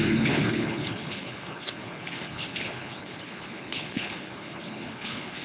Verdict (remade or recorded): remade